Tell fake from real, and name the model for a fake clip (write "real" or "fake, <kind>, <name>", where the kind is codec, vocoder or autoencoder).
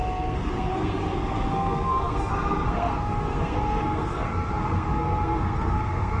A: fake, codec, SNAC